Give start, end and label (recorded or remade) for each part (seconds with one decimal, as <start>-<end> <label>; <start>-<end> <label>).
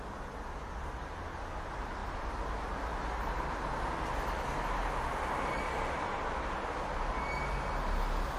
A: 0.0-8.4 recorded